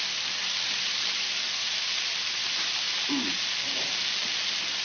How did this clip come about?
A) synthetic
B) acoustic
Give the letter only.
B